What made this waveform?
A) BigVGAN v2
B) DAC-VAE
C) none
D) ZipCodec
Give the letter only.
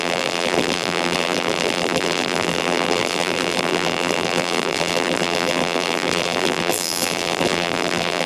A